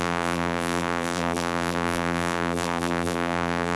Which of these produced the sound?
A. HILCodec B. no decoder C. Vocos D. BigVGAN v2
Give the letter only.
D